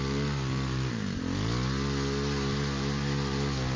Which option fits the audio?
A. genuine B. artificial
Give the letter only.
A